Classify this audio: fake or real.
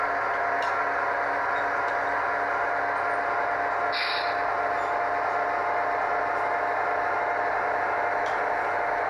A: real